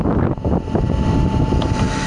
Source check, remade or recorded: recorded